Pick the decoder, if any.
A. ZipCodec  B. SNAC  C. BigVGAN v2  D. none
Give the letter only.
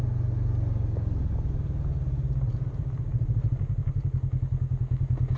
D